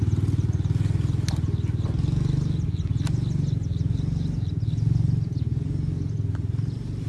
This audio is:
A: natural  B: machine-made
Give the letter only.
A